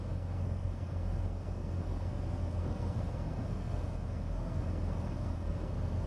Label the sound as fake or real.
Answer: fake